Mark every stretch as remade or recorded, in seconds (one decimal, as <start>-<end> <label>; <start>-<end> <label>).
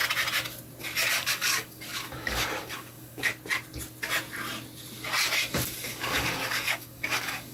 0.0-1.1 recorded; 1.1-3.3 remade; 3.3-5.7 recorded; 5.7-7.5 remade